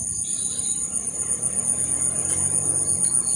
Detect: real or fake real